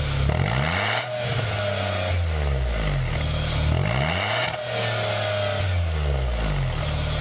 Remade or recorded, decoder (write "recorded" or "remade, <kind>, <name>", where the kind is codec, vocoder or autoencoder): recorded